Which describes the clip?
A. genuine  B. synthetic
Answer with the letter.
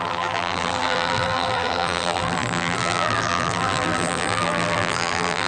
B